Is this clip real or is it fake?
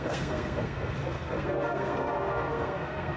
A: fake